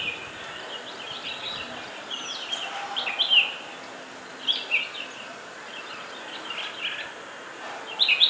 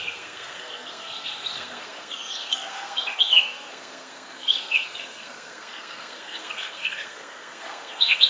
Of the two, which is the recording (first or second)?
first